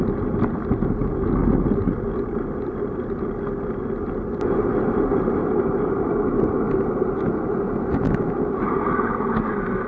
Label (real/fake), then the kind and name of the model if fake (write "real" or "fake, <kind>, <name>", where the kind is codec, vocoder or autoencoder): real